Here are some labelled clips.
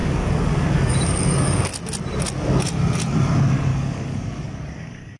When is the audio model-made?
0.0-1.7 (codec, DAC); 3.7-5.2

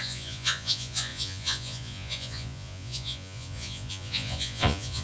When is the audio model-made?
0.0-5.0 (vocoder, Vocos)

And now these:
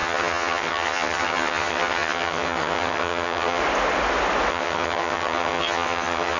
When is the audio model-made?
0.0-3.6 (vocoder, HiFi-GAN); 4.5-6.4